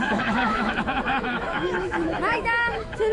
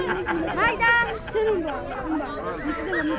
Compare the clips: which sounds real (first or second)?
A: second